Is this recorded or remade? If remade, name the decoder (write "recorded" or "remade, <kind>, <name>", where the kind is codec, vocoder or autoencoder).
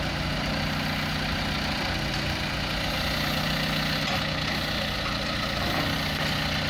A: recorded